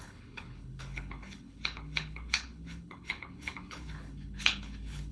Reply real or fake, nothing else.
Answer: fake